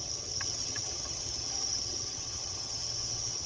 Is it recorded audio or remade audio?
remade